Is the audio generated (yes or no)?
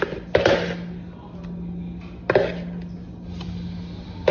no